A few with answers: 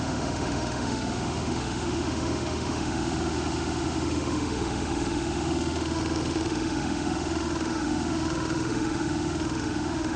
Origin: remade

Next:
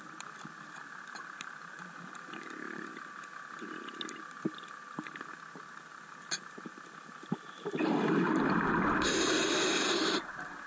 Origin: recorded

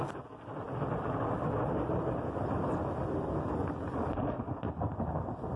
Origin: recorded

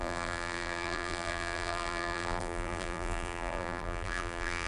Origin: remade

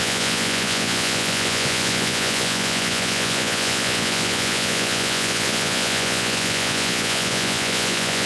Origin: remade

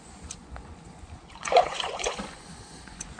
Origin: remade